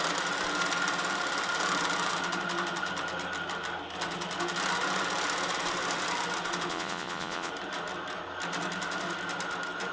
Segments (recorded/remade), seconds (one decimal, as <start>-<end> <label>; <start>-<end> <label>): 0.0-6.7 recorded; 6.7-7.5 remade; 7.5-9.9 recorded